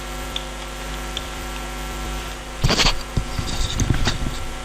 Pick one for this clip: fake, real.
fake